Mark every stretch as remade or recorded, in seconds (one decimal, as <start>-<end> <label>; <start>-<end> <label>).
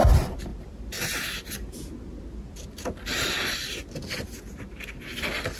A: 0.0-5.6 recorded